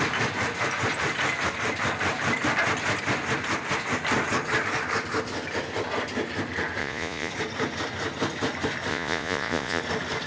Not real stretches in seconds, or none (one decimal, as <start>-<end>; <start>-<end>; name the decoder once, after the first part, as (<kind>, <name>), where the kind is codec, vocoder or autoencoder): 6.8-7.3 (vocoder, Vocos); 8.9-9.8